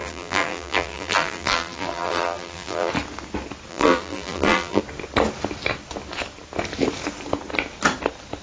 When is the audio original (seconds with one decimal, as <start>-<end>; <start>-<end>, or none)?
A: 2.9-3.7; 4.8-8.4